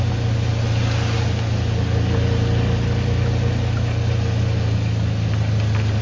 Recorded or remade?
recorded